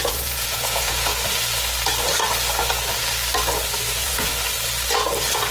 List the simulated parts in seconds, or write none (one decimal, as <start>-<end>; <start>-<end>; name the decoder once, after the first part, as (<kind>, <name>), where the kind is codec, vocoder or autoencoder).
0.0-1.1 (vocoder, Vocos); 3.9-4.3